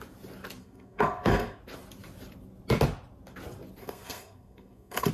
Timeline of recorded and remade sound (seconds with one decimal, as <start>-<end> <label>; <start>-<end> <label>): 0.0-0.6 recorded; 0.6-1.6 remade; 1.6-3.8 recorded; 3.8-5.1 remade